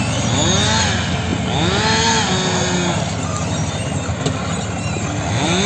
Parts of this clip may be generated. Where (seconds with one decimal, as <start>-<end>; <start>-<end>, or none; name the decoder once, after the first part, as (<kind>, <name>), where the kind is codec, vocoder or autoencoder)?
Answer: none